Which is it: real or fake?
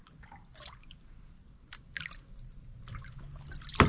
real